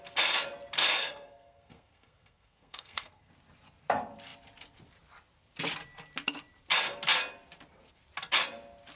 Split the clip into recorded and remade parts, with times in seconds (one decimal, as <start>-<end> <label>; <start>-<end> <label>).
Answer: 0.0-1.0 recorded; 1.0-3.3 remade; 3.3-9.0 recorded